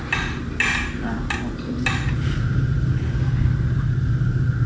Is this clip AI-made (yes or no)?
no